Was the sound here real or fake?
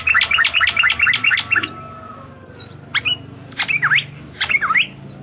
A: real